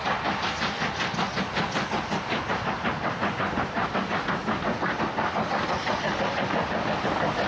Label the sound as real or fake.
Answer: real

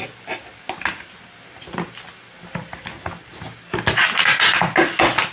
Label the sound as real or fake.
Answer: real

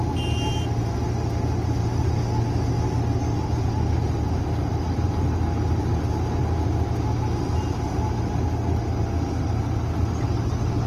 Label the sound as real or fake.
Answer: real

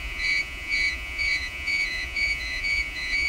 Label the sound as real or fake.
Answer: fake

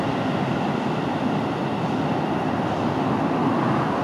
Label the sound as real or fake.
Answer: real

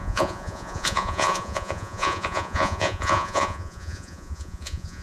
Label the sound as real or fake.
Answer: fake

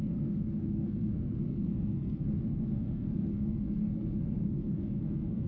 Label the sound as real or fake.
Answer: fake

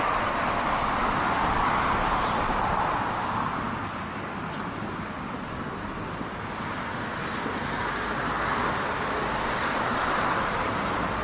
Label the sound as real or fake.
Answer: real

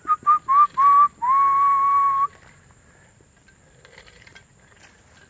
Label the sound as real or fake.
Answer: real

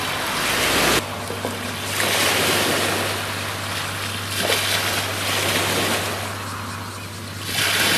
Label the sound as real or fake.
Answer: real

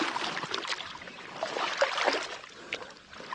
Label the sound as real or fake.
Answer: real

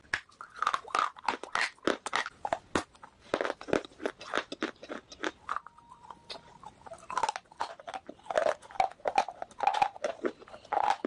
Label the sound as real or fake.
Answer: real